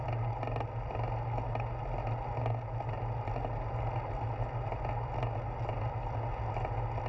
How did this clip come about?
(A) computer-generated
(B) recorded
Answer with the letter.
B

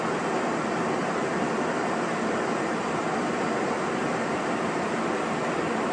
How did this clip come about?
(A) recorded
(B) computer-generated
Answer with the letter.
A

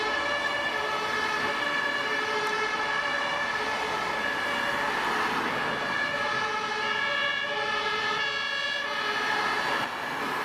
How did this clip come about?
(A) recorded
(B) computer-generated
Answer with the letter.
A